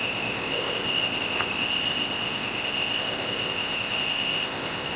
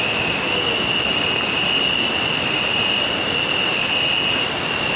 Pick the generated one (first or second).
first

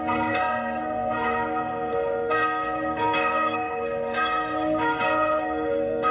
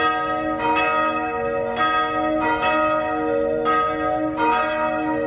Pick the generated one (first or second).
first